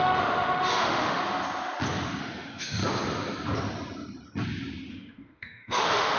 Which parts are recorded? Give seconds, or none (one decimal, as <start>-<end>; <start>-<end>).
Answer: 1.2-2.2; 2.8-4.9